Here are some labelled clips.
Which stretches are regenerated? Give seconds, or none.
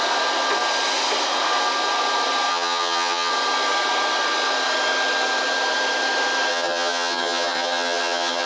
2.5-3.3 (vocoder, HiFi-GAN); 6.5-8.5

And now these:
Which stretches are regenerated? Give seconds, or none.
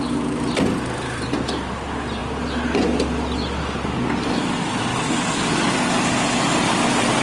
none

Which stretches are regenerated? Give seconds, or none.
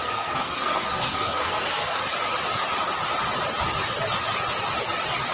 0.0-2.0 (codec, SNAC)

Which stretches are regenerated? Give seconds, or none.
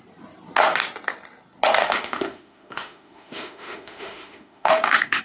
1.8-5.2 (autoencoder, DAC-VAE)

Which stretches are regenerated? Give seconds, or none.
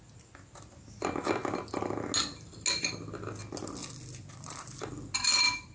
none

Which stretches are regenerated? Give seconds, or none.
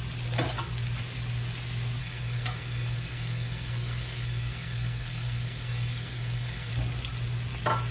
2.0-6.7 (codec, SNAC)